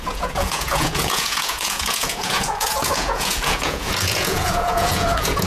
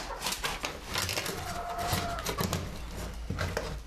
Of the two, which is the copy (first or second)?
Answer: first